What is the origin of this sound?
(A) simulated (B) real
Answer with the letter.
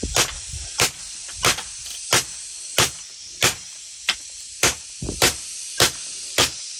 A